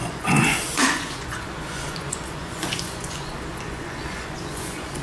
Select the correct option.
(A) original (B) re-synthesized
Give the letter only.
B